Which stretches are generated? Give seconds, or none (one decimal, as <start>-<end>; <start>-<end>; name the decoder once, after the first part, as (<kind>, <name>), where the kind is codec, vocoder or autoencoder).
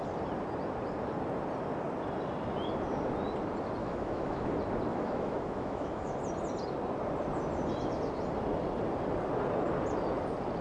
3.8-4.5 (autoencoder, DAC-VAE); 4.9-6.2